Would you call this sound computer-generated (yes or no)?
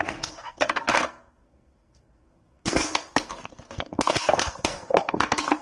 yes